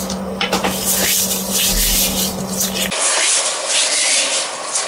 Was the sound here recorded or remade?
recorded